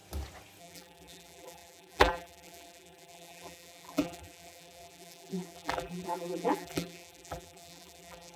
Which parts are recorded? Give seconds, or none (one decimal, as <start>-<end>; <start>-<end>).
0.0-0.6